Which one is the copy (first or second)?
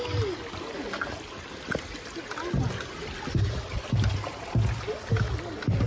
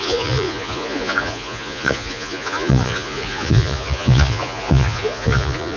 second